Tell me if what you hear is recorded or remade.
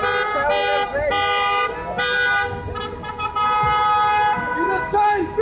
recorded